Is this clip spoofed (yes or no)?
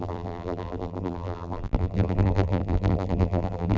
yes